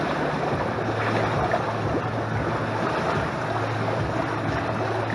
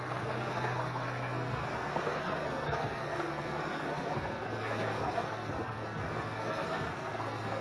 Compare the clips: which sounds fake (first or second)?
second